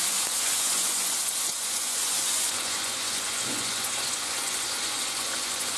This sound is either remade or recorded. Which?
remade